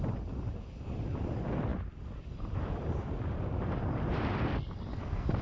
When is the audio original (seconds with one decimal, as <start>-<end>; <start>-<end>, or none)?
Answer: 0.0-4.9